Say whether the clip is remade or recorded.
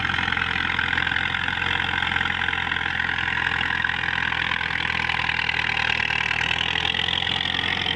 recorded